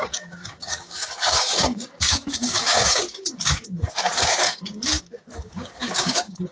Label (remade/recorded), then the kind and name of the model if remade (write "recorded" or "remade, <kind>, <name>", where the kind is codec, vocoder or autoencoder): remade, codec, DAC